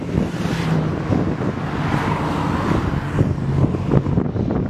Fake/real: real